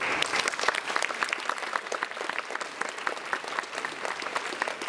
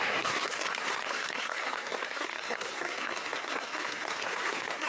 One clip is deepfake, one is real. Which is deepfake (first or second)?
second